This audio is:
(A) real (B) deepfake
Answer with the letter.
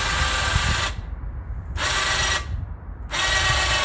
A